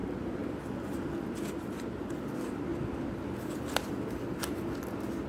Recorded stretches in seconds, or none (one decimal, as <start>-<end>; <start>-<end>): 0.0-5.3